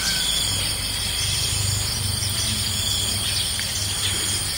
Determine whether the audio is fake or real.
real